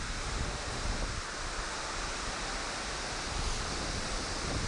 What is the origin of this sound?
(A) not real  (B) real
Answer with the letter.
B